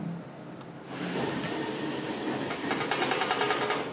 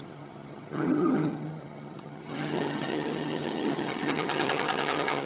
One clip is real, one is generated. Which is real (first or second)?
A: first